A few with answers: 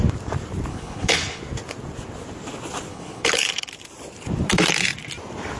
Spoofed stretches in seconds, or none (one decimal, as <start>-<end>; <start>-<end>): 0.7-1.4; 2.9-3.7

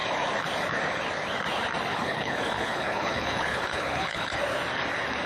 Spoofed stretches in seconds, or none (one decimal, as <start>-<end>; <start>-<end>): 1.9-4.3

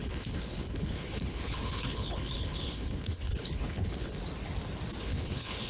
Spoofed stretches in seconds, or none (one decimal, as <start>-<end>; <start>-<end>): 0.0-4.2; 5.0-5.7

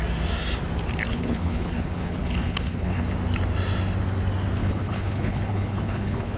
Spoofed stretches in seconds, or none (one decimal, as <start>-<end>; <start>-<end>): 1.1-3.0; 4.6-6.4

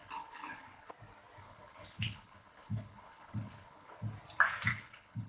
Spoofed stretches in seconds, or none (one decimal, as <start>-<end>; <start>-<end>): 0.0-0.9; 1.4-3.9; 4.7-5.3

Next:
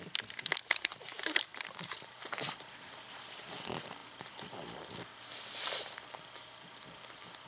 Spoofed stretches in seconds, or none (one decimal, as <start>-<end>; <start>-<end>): none

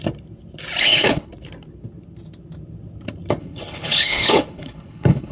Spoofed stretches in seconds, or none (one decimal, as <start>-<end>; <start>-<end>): 0.8-1.3; 3.4-5.3

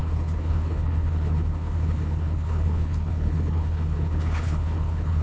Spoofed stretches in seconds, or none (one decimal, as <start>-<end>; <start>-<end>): 0.0-5.2